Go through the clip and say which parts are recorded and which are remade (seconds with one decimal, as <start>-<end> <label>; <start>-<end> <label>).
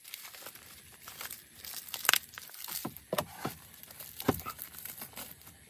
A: 0.0-5.7 recorded